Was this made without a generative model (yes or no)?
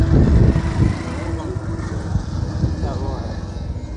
yes